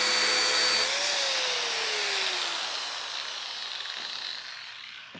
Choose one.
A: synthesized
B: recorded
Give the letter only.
B